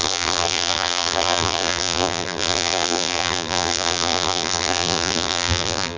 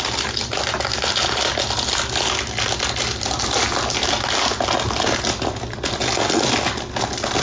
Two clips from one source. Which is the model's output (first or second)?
first